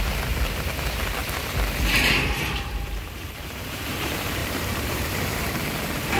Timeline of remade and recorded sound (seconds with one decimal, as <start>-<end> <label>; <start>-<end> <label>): 0.0-1.2 remade; 1.2-2.3 recorded; 2.3-6.2 remade